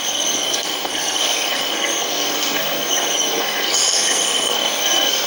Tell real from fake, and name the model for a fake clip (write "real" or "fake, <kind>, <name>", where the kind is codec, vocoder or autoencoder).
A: fake, codec, SNAC